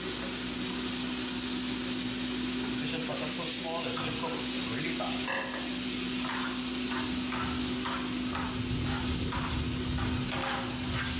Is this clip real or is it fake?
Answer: real